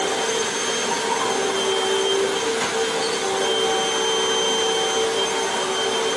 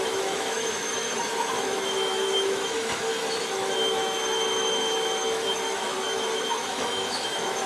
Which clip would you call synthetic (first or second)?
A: second